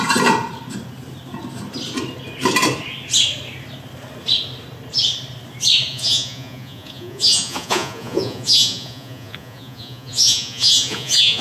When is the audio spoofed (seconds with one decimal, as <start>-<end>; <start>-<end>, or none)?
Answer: 5.9-11.4